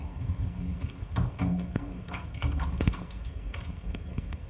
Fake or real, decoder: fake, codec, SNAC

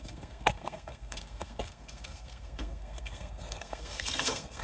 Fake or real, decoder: fake, codec, SNAC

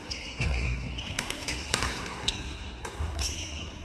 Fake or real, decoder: fake, codec, SNAC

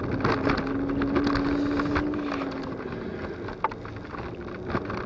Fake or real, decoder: real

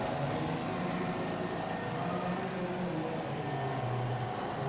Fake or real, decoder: real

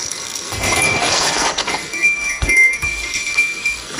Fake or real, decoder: fake, codec, SNAC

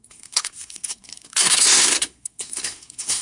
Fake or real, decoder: fake, codec, SNAC